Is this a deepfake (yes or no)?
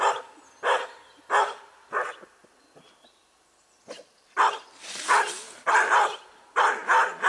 no